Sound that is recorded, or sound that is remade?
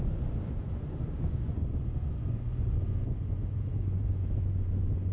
remade